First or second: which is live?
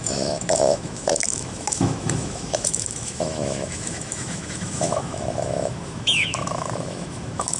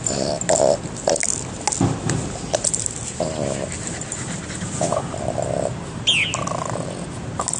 second